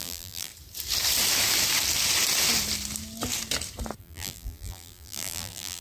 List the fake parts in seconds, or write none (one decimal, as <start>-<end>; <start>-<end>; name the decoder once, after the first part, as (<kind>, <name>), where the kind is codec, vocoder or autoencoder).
0.0-0.5 (vocoder, BigVGAN v2); 4.0-5.8